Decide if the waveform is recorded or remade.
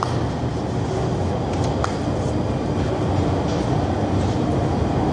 recorded